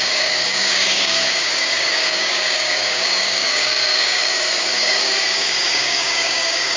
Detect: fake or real fake